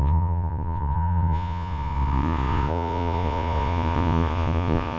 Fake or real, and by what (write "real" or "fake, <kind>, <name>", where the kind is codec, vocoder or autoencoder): fake, vocoder, Vocos